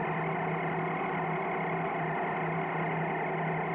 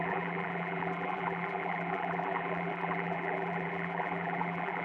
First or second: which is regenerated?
second